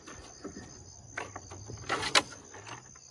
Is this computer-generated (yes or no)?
no